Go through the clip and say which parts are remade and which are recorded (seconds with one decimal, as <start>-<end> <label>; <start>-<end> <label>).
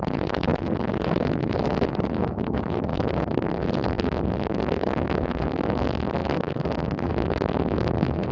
0.0-8.3 remade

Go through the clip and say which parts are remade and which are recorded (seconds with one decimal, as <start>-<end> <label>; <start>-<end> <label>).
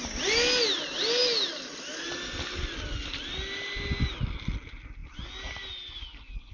0.0-6.5 recorded